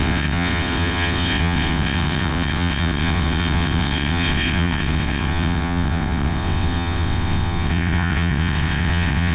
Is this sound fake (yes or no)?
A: yes